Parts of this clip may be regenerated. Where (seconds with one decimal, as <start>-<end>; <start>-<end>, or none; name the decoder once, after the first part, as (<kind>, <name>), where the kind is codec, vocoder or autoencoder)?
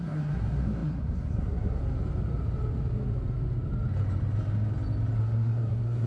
0.0-1.8 (codec, SNAC); 5.2-6.1